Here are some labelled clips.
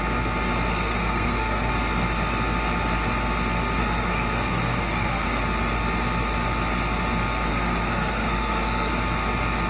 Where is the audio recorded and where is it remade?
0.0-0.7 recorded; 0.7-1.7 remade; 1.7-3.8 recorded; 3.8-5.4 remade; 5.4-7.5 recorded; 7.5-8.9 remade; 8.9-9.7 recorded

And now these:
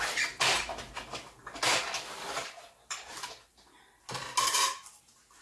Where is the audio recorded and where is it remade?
0.0-5.4 recorded

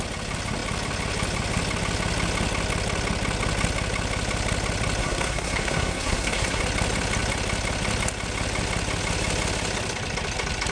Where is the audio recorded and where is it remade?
0.0-5.0 recorded; 5.0-6.6 remade; 6.6-10.7 recorded